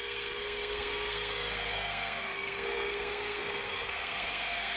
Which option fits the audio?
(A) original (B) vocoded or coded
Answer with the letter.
B